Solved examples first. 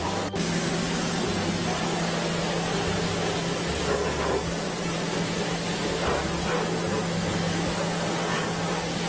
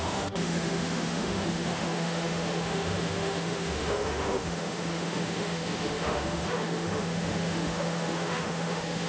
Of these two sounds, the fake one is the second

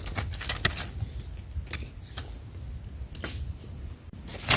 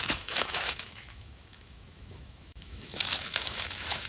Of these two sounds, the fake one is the second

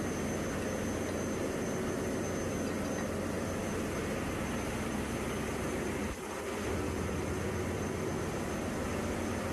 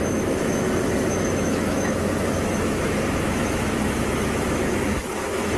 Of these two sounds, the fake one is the second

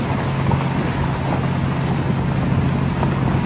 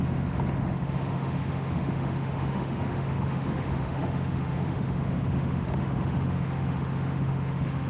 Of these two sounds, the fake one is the second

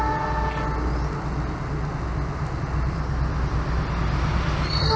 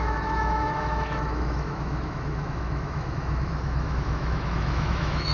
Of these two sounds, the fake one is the second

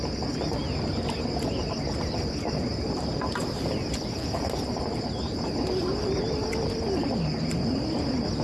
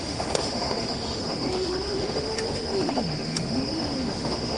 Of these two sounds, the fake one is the second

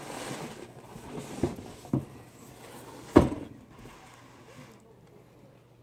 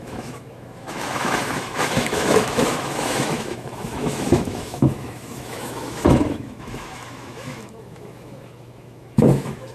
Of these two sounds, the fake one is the second